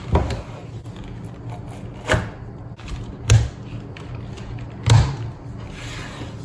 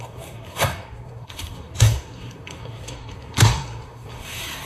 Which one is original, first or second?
first